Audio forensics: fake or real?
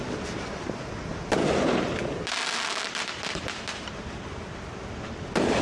real